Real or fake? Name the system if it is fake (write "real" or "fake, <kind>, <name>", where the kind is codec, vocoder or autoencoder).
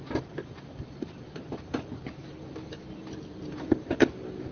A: real